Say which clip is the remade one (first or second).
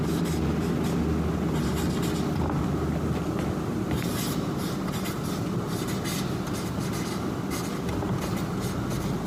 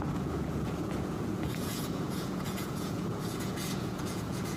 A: second